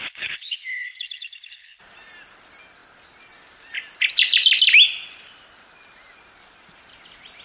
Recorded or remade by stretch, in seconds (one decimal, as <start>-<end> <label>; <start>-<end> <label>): 0.0-1.8 remade; 1.8-7.4 recorded